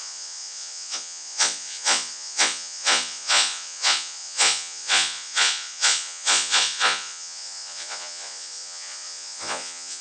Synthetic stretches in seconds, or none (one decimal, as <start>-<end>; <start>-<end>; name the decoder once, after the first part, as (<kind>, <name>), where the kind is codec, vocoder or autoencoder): 0.0-10.0 (vocoder, Vocos)